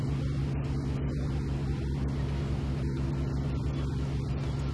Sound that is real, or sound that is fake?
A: real